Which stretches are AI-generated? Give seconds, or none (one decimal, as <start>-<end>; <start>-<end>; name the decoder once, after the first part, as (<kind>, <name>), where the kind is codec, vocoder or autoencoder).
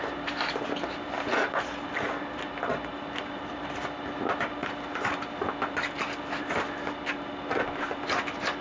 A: none